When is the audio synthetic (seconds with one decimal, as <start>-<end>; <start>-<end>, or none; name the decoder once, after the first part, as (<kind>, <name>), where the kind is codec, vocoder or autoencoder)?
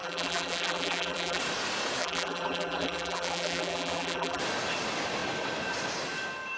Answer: 0.0-1.4 (vocoder, BigVGAN v2); 2.0-4.4